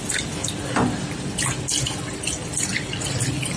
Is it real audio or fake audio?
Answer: real